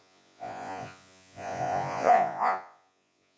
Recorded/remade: remade